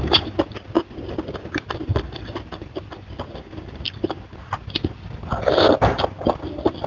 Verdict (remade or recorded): remade